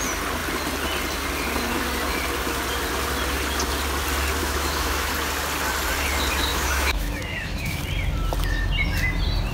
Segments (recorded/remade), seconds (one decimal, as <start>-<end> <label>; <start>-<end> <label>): 0.0-4.4 recorded; 4.4-5.1 remade; 5.1-6.5 recorded; 6.5-7.8 remade; 7.8-9.5 recorded